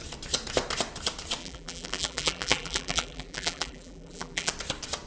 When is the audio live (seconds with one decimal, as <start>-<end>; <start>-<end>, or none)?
0.0-1.4; 4.5-5.1